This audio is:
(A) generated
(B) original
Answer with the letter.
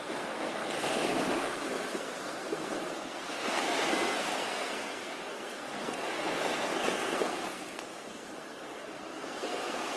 A